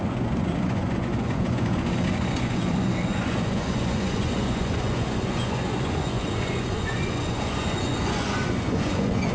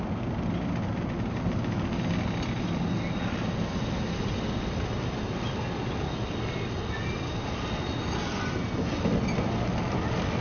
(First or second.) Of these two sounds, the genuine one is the second